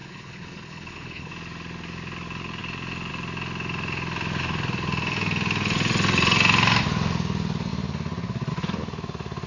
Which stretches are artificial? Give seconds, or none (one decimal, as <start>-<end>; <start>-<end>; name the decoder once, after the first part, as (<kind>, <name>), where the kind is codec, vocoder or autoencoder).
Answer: 0.0-1.3 (codec, HILCodec)